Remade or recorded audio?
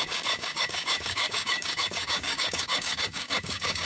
remade